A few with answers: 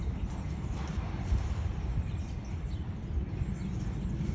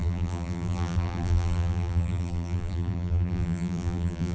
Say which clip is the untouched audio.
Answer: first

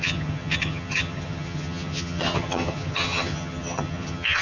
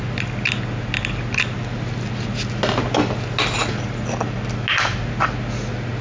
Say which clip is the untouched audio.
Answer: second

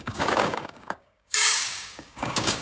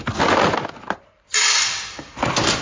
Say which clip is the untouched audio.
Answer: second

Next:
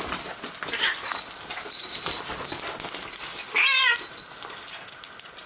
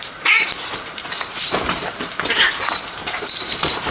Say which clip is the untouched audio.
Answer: first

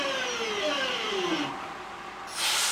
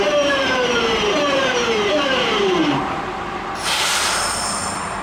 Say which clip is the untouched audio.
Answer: first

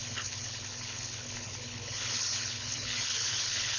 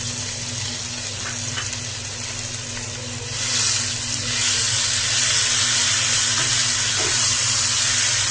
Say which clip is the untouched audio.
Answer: second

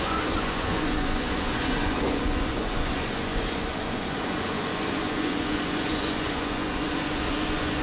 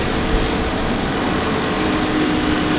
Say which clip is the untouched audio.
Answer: second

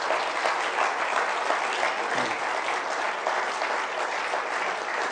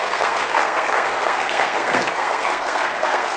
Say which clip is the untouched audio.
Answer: first